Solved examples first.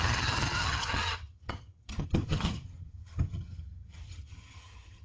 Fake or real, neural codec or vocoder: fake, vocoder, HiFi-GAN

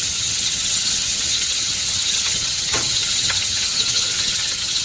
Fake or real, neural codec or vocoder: fake, vocoder, HiFi-GAN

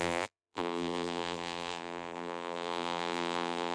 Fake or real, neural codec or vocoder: fake, vocoder, BigVGAN v2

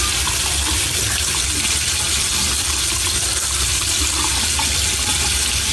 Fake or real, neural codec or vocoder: real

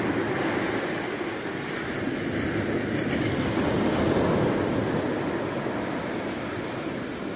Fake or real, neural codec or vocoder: real